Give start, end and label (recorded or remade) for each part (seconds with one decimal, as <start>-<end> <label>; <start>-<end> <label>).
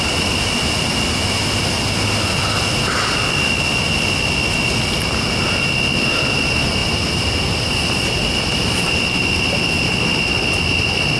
0.0-11.2 recorded